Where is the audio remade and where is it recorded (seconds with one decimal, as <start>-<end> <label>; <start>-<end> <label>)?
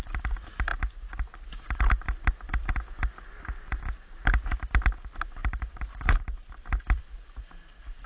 0.0-5.4 recorded; 5.4-7.0 remade; 7.0-8.1 recorded